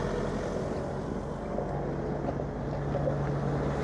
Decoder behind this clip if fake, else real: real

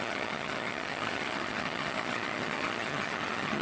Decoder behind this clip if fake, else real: fake, vocoder, HiFi-GAN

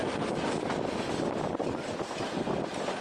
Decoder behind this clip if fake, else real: real